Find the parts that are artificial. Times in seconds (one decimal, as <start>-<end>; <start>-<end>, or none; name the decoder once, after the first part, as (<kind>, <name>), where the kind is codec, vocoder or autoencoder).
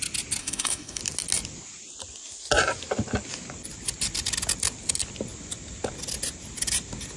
0.4-1.0 (autoencoder, DAC-VAE)